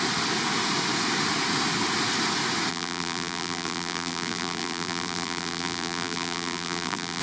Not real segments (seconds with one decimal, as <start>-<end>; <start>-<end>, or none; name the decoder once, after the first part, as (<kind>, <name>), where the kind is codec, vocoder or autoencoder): 2.7-7.2 (vocoder, BigVGAN v2)